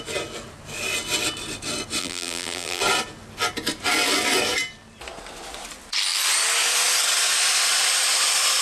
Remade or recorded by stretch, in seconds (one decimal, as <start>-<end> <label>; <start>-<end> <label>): 0.0-2.0 recorded; 2.0-2.8 remade; 2.8-8.6 recorded